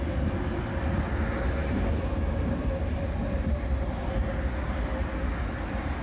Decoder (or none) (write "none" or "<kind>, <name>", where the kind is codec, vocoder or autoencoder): none